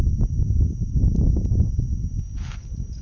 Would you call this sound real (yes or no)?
yes